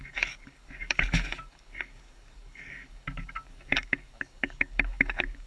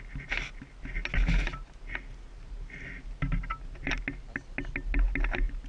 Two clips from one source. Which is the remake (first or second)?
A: first